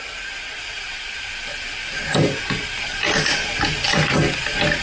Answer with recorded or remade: recorded